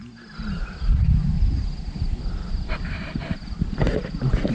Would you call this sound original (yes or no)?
yes